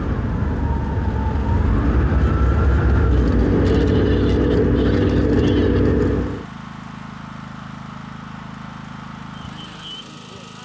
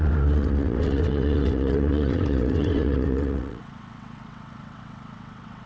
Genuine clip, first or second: first